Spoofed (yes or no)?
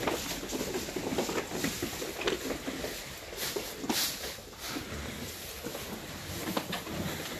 no